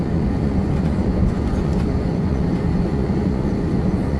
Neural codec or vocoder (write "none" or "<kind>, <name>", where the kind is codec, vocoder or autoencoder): vocoder, Vocos